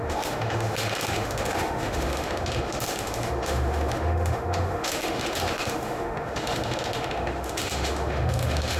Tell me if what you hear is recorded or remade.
remade